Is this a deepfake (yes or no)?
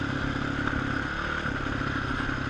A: no